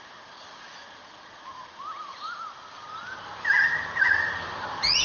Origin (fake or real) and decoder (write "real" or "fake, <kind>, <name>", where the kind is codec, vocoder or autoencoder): fake, vocoder, BigVGAN v2